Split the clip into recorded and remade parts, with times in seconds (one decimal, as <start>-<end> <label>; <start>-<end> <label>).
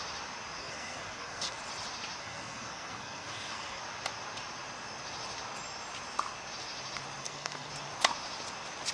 0.0-0.6 recorded; 0.6-1.6 remade; 1.6-2.2 recorded; 2.2-3.8 remade; 3.8-7.2 recorded; 7.2-7.7 remade; 7.7-8.9 recorded